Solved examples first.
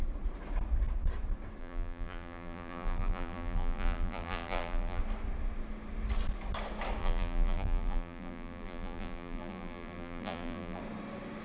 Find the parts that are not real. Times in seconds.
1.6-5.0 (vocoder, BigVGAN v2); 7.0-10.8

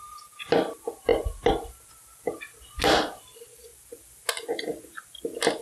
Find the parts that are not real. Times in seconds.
none

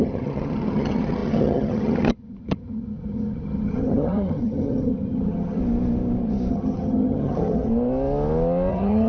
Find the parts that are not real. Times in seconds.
0.0-5.6 (vocoder, HiFi-GAN); 6.5-7.7; 8.7-9.1

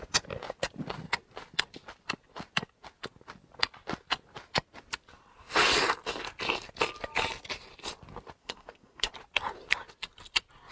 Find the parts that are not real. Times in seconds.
8.4-9.1 (codec, SNAC)

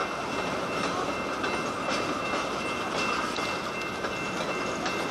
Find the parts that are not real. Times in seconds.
none

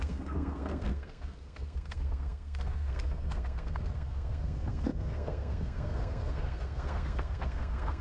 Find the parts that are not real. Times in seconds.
0.0-8.0 (codec, SNAC)

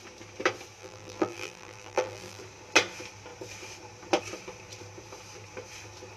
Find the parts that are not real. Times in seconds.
0.8-2.4 (vocoder, BigVGAN v2)